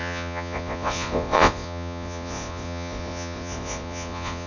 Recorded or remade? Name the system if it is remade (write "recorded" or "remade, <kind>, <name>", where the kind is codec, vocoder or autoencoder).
remade, vocoder, Vocos